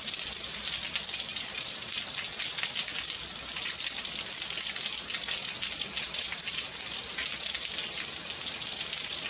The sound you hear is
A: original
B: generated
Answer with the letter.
A